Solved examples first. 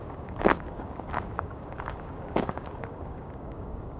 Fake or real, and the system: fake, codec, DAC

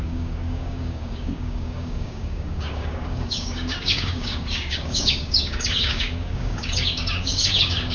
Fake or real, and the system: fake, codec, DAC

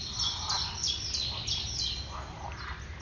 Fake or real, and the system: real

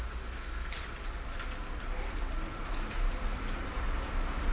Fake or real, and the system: real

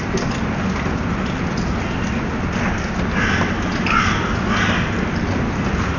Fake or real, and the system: real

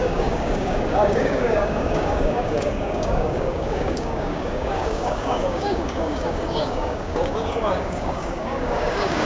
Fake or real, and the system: fake, codec, DAC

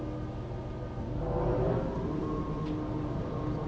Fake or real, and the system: real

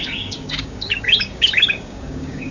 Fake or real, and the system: fake, codec, DAC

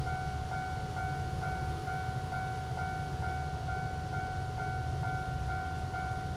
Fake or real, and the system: real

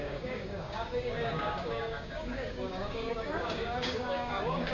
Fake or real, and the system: fake, codec, DAC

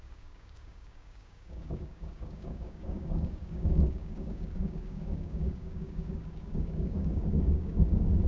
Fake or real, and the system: fake, codec, DAC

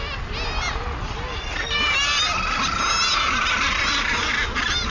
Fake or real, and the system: real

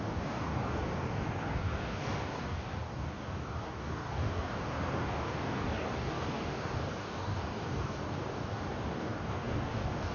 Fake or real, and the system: fake, codec, DAC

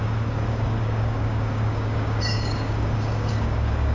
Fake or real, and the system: fake, codec, DAC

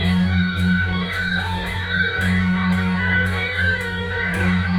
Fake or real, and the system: fake, codec, DAC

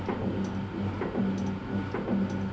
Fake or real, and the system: real